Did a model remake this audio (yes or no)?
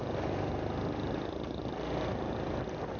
no